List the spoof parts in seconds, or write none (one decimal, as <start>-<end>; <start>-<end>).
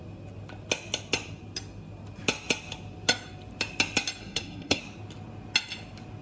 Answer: 4.2-4.8